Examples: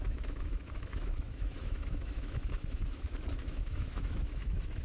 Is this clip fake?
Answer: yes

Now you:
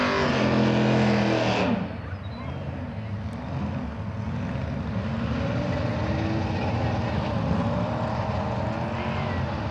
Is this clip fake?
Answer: no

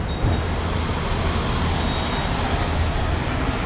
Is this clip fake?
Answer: no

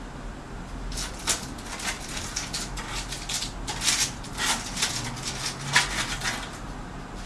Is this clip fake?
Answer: no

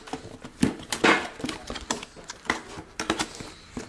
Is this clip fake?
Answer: no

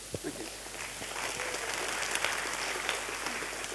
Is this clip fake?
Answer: no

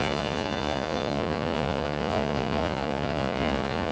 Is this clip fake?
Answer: yes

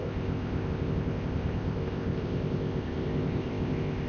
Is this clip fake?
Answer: yes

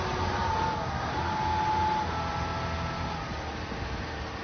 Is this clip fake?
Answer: no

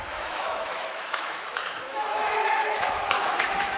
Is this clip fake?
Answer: yes